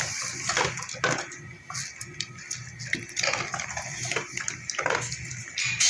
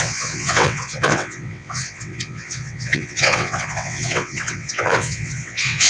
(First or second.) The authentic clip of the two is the first